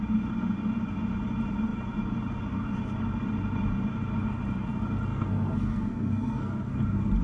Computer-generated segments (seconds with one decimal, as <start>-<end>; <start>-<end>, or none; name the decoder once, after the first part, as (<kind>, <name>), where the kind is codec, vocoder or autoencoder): 5.1-6.8 (codec, SNAC)